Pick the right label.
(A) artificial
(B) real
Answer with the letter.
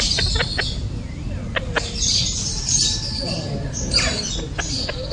B